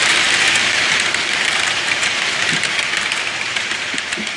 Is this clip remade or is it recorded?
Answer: remade